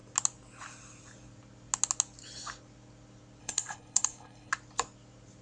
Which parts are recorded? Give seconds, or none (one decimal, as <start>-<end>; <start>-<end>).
0.0-3.4; 4.5-5.4